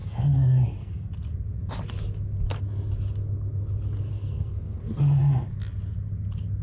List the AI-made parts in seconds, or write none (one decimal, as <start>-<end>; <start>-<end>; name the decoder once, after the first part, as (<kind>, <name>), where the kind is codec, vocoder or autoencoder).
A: 0.0-1.1 (codec, SNAC); 4.1-4.8